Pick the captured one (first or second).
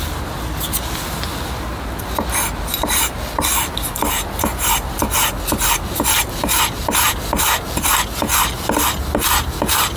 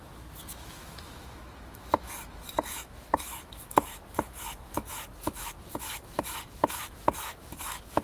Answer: first